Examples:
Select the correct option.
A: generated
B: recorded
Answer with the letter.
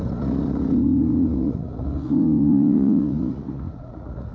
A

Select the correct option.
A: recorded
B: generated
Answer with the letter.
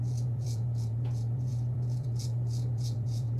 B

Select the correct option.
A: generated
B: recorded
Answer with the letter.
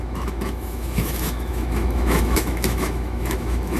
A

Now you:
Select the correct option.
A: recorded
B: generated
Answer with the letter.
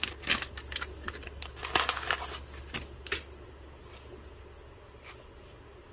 A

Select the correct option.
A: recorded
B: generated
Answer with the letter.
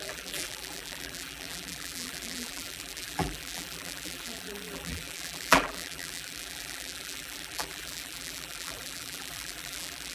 B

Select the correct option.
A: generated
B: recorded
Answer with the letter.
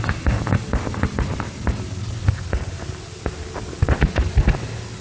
B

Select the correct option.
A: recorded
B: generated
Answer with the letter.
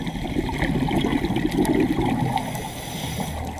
A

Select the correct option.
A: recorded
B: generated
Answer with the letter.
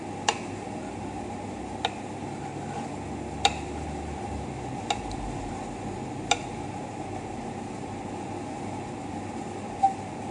A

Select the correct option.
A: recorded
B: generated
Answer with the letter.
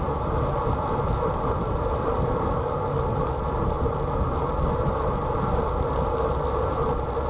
A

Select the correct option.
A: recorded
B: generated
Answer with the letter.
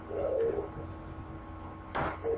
A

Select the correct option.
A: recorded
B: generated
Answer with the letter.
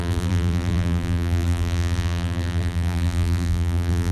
B